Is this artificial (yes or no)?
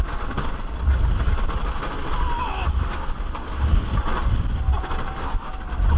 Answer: no